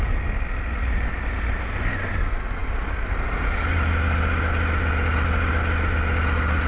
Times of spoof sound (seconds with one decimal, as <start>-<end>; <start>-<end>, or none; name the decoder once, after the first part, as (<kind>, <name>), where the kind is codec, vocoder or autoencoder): none